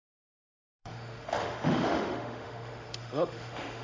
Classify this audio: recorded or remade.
remade